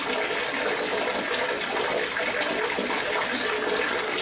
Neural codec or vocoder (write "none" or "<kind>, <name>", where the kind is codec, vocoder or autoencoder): none